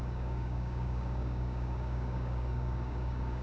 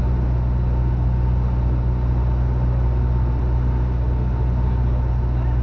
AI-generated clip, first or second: first